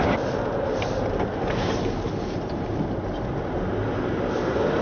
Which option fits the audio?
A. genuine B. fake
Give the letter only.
A